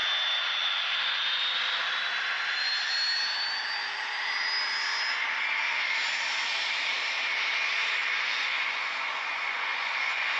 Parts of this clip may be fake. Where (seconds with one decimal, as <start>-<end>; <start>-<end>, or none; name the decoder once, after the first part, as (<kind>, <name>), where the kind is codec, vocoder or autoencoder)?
8.0-10.4 (vocoder, Vocos)